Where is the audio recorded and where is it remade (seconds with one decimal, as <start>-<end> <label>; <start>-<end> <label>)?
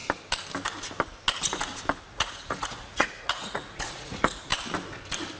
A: 0.0-2.1 recorded; 2.1-4.5 remade; 4.5-5.4 recorded